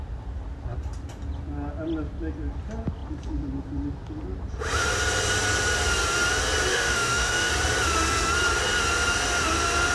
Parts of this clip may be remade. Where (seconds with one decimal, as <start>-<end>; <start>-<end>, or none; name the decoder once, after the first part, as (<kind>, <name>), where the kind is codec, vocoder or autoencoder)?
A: 6.7-7.5 (autoencoder, DAC-VAE)